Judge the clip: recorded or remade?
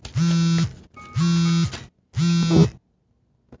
recorded